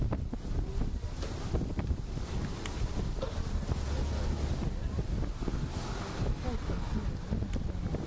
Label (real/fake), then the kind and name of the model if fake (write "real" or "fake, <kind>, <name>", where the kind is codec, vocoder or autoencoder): real